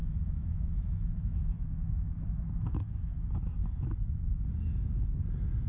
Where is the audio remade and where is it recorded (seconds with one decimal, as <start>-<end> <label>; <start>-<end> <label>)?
0.0-3.3 remade; 3.3-5.7 recorded